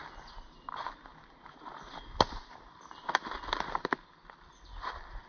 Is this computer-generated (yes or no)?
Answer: no